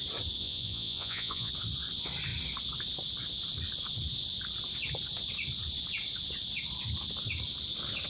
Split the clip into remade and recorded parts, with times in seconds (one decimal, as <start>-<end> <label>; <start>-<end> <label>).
0.0-0.4 recorded; 0.4-1.5 remade; 1.5-8.1 recorded